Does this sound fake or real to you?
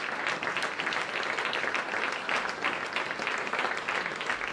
real